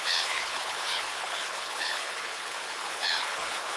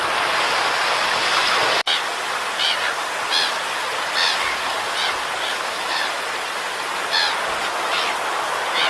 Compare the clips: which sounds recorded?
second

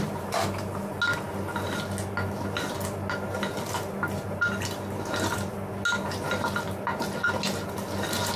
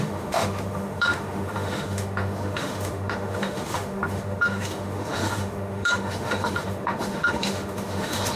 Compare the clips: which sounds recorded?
first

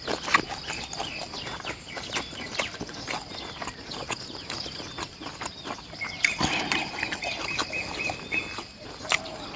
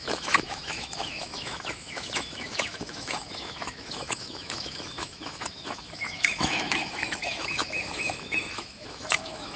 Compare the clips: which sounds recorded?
first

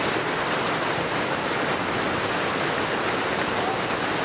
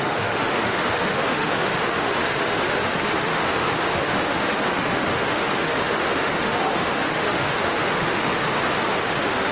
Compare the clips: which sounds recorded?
first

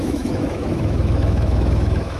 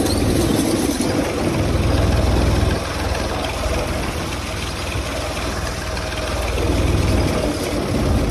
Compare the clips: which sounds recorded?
second